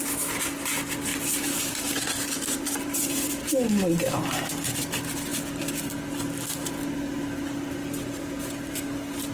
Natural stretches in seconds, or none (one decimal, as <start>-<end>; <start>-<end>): 0.0-1.1; 3.3-9.3